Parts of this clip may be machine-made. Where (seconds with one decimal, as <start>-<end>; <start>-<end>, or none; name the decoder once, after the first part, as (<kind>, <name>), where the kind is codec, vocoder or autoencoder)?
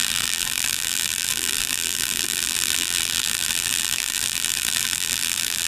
0.0-5.7 (vocoder, BigVGAN v2)